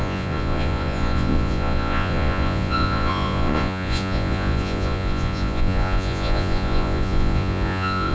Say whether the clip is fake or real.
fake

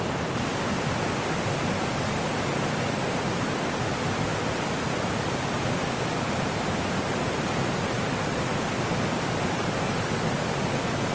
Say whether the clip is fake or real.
real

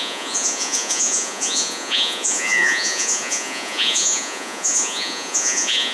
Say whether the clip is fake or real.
fake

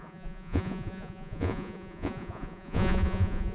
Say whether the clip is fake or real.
fake